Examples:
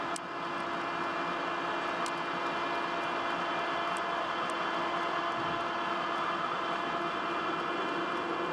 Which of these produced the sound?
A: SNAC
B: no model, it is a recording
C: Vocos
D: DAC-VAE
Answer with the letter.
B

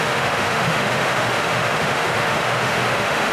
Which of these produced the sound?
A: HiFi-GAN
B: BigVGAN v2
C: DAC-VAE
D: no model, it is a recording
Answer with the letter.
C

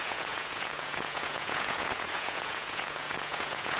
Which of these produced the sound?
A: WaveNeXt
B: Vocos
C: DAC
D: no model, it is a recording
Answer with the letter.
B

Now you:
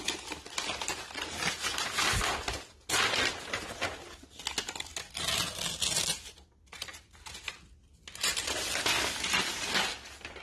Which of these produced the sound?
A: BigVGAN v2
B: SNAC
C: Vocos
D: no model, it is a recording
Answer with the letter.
D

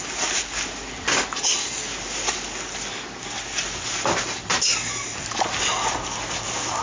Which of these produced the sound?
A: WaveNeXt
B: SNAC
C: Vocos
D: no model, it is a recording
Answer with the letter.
D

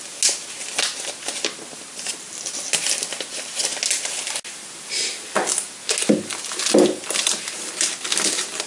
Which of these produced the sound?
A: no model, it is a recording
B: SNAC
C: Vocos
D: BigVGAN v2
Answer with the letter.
A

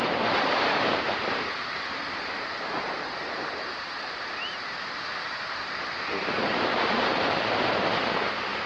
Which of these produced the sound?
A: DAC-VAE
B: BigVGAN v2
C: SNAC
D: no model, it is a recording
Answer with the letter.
B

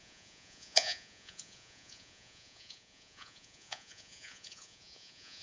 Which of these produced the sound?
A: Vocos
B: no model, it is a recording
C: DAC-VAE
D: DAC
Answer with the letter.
A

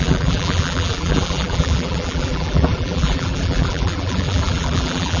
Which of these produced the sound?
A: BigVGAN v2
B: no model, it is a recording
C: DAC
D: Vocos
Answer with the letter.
A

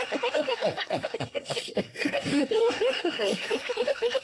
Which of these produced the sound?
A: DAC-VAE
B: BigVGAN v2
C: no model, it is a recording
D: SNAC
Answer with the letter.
D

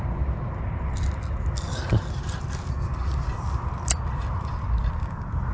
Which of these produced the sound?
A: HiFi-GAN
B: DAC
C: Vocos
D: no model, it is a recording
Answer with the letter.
D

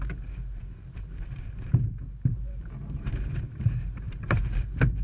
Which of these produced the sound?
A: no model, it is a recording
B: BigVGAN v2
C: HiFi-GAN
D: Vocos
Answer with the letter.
B